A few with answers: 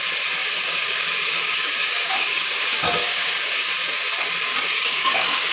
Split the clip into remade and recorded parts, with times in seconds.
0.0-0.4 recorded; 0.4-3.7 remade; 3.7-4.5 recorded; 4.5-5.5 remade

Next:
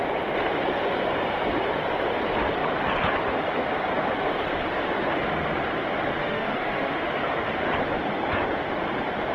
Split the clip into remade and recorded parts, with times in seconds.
0.0-6.2 recorded; 6.2-7.0 remade; 7.0-9.3 recorded